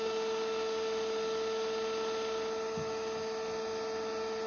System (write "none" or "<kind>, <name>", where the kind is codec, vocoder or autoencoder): none